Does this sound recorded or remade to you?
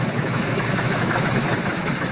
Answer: remade